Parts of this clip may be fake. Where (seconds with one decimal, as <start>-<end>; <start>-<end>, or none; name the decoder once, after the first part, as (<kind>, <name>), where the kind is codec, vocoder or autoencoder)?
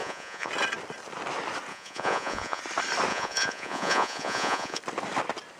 0.0-0.5 (vocoder, Vocos); 1.7-2.6; 3.1-4.8